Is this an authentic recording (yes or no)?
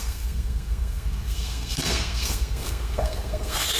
no